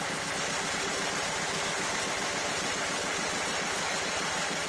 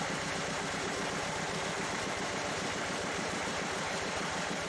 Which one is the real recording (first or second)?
first